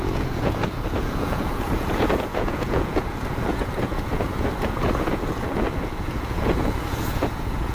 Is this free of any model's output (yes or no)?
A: no